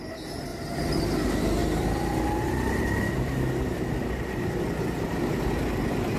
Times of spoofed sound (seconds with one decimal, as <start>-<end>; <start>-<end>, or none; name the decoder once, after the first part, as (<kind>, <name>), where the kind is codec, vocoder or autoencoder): 0.5-1.0 (vocoder, BigVGAN v2)